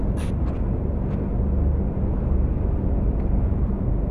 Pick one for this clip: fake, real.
real